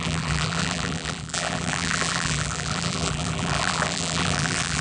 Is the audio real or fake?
fake